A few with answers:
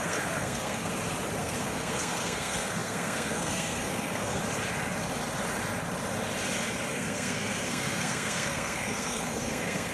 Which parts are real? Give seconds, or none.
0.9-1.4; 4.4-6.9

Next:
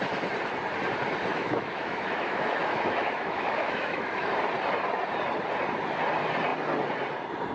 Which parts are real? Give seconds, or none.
0.0-1.3; 4.3-7.5

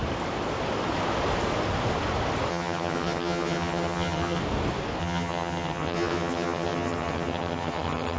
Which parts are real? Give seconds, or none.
0.0-2.5; 4.4-5.0